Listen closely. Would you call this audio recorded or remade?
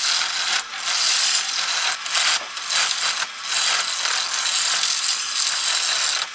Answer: recorded